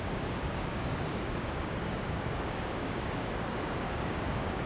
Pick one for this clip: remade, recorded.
remade